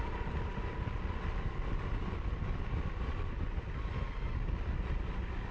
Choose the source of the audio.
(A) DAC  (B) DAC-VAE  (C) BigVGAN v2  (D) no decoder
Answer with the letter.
D